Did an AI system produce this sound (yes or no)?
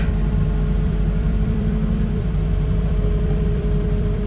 yes